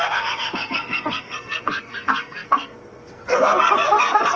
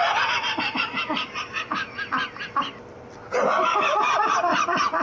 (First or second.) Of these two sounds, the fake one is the first